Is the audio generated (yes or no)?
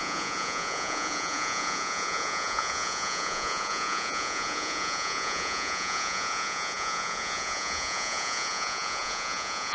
yes